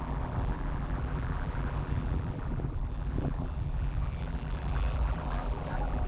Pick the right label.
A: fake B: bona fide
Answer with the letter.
A